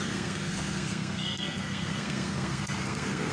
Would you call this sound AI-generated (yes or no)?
yes